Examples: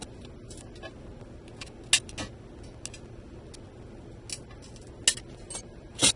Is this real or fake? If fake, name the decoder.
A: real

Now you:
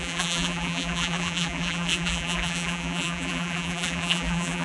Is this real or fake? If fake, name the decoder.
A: fake, vocoder, BigVGAN v2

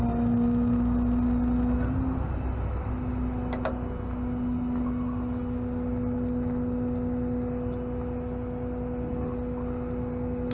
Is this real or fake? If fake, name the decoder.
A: real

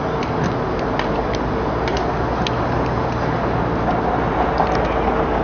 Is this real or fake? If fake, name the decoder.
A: real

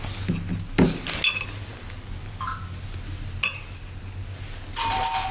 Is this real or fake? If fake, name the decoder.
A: real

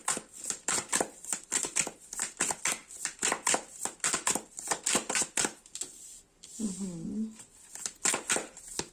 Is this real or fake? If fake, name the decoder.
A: real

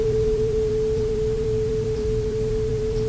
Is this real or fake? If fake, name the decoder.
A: fake, vocoder, BigVGAN v2